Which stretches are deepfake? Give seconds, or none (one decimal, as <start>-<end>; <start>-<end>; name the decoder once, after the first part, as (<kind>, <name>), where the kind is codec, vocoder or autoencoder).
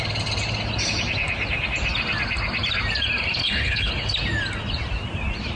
3.4-3.9 (codec, HILCodec)